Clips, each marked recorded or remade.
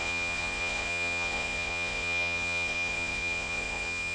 remade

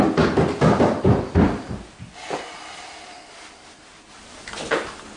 recorded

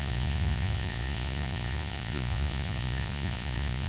remade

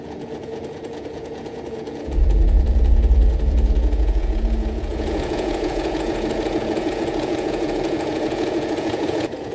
remade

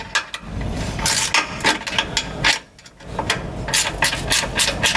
recorded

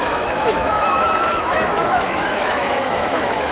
remade